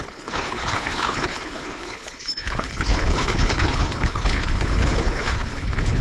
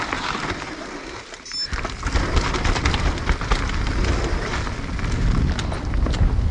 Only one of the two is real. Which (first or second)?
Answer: second